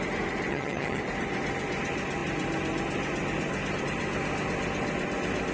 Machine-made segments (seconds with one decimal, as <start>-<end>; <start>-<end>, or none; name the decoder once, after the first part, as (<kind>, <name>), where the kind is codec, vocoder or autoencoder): 0.5-1.0 (vocoder, HiFi-GAN)